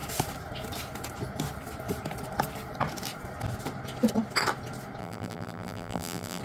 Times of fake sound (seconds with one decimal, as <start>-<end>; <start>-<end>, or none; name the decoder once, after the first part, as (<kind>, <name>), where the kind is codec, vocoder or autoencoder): 5.0-6.4 (vocoder, BigVGAN v2)